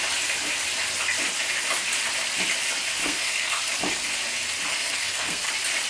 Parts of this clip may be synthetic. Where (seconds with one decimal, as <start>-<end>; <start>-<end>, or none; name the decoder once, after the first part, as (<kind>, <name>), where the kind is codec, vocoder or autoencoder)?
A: 3.0-3.7 (codec, SNAC); 4.7-5.5